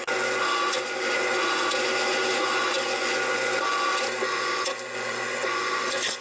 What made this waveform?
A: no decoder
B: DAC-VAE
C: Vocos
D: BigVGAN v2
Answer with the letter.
C